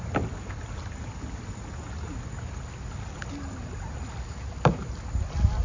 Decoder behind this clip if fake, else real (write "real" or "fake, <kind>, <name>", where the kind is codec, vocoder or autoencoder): real